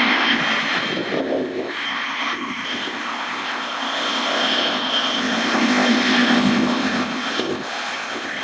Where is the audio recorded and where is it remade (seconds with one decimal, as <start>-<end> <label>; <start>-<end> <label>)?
0.0-0.4 remade; 0.4-1.2 recorded; 1.2-8.4 remade